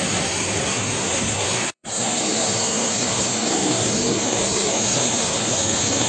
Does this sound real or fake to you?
fake